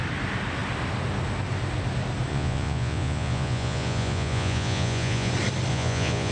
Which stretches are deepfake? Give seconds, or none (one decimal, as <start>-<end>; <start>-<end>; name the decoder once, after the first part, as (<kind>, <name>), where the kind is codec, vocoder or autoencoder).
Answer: 2.3-5.3 (vocoder, Vocos); 5.7-6.3